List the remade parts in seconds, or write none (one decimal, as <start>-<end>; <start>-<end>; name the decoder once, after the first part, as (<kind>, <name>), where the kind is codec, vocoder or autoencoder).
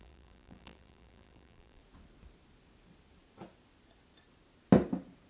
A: 0.0-1.8 (vocoder, BigVGAN v2)